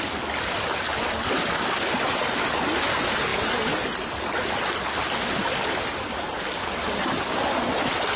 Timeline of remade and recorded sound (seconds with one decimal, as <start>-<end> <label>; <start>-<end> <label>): 0.0-8.2 recorded